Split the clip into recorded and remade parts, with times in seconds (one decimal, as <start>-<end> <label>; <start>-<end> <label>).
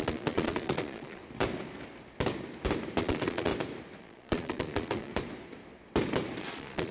0.0-1.2 remade; 1.2-3.0 recorded; 3.0-3.5 remade; 3.5-4.0 recorded; 4.0-5.1 remade; 5.1-6.4 recorded; 6.4-6.9 remade